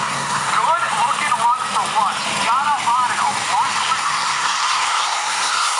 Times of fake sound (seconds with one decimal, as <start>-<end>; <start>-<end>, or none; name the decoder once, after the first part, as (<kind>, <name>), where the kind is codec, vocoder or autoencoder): 0.0-0.5 (codec, SNAC); 4.0-5.8